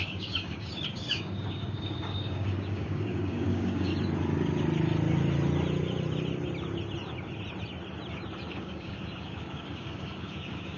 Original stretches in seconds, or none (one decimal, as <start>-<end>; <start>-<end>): 3.9-8.5